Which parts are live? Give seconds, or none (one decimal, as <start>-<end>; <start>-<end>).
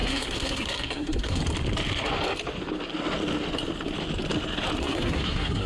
1.4-4.8